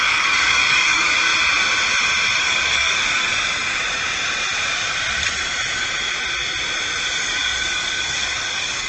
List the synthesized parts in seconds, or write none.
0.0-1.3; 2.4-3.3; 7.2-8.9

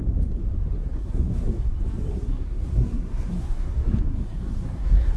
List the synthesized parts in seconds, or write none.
0.8-1.7; 2.1-5.2

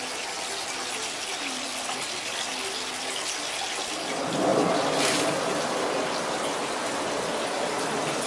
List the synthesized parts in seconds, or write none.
none

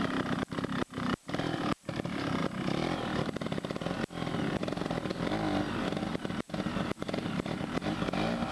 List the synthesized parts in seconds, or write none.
0.0-2.4; 4.6-5.1; 5.8-8.5